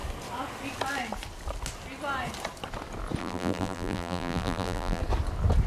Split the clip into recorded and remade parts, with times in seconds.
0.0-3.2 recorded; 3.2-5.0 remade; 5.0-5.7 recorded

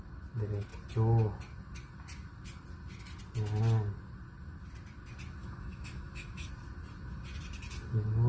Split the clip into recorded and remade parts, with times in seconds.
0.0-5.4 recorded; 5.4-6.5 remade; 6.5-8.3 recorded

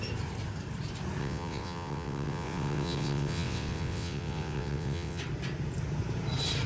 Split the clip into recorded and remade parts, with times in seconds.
0.0-1.2 recorded; 1.2-5.2 remade; 5.2-6.7 recorded